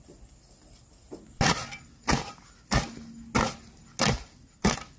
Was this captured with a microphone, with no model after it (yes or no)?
yes